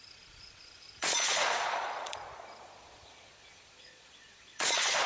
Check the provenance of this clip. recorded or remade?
remade